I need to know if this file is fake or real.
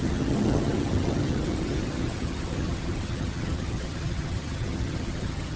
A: fake